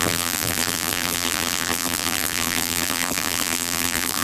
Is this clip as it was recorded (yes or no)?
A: no